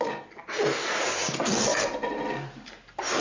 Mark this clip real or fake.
real